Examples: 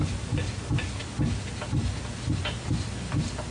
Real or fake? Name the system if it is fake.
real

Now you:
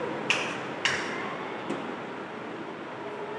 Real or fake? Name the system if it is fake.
real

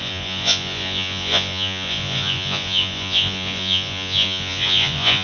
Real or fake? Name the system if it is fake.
fake, vocoder, Vocos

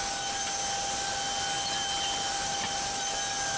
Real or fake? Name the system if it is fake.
real